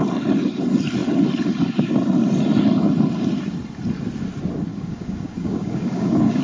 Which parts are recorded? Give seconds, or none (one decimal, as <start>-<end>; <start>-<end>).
0.0-4.7